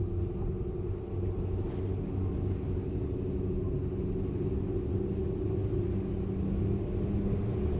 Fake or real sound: real